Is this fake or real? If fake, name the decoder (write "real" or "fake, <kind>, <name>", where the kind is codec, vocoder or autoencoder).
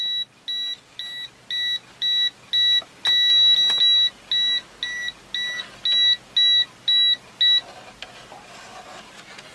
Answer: real